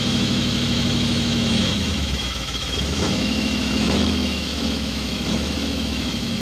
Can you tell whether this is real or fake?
fake